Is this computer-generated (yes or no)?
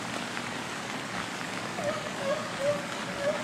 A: yes